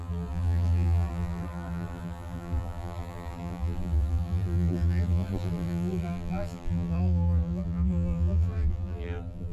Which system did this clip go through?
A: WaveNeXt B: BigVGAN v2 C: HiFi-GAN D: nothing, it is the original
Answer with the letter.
B